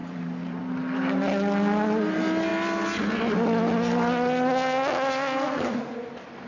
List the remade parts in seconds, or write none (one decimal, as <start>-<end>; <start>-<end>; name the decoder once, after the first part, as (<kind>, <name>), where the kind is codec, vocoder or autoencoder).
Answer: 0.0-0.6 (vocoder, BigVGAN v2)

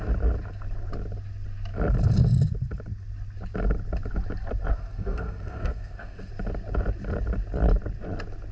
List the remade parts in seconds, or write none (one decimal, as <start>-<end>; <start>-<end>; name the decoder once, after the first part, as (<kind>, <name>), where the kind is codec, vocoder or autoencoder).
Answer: 4.7-6.3 (codec, SNAC)

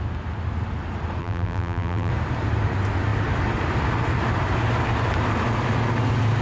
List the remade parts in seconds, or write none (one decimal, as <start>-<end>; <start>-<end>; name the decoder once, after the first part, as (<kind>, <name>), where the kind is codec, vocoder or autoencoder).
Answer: 1.2-2.1 (vocoder, BigVGAN v2)

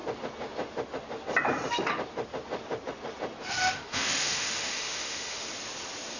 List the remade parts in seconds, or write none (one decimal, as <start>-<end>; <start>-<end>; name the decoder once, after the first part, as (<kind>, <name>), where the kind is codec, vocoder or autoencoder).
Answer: 3.5-5.4 (autoencoder, DAC-VAE)

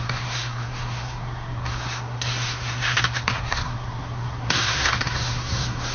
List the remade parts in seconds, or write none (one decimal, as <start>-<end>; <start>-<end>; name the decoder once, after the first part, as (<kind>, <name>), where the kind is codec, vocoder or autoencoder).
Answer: 0.0-5.9 (codec, SNAC)

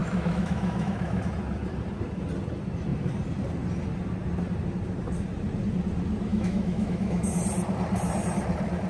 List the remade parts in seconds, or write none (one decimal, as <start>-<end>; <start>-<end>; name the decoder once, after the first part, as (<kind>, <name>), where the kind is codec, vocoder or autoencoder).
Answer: 0.0-1.2 (autoencoder, DAC-VAE); 6.3-7.4